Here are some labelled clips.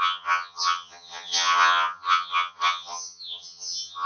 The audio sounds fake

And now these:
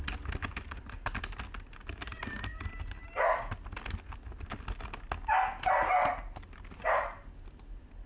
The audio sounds real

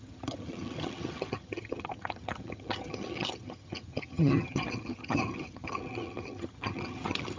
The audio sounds fake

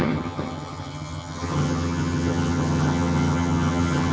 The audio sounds fake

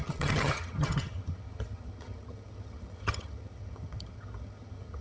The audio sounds fake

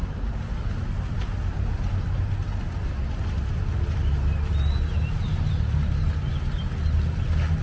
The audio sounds real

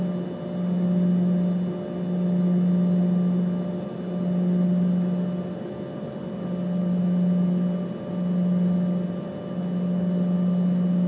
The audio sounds real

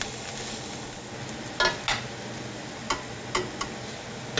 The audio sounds real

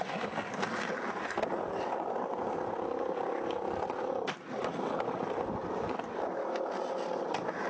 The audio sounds real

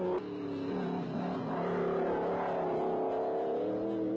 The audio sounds real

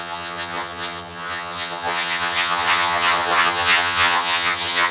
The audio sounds fake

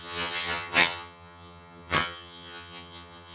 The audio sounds fake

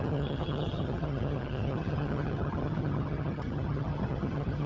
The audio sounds fake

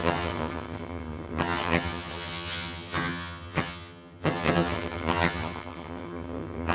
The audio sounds fake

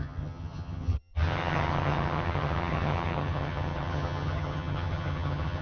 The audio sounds fake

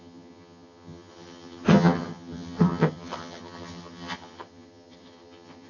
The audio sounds fake